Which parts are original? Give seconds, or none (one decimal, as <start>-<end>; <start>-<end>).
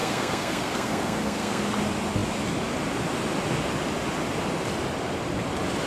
1.6-5.9